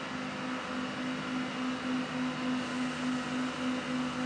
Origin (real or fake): real